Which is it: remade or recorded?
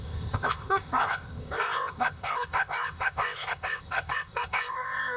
remade